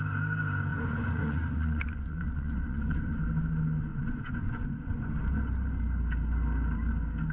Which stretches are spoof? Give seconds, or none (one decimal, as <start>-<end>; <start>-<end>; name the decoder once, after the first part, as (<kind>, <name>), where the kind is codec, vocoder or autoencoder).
0.7-3.2 (vocoder, Vocos); 3.9-5.1